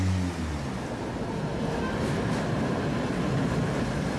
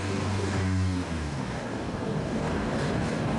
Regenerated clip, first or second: second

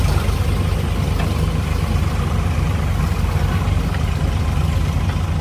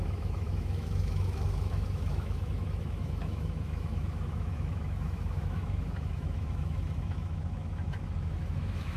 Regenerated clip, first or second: second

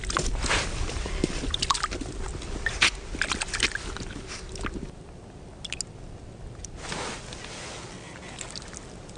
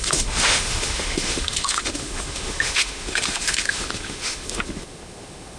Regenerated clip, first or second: second